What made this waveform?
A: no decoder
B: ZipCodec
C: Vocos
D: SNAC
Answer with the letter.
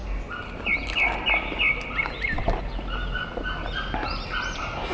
A